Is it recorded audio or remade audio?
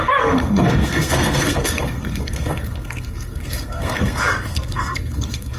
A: remade